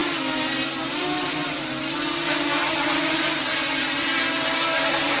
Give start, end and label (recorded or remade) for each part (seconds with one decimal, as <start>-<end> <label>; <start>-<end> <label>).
0.0-0.8 recorded; 0.8-1.4 remade; 1.4-2.3 recorded; 2.3-5.2 remade